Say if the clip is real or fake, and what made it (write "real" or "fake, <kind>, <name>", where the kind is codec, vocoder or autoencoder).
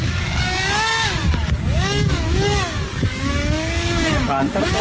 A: fake, codec, DAC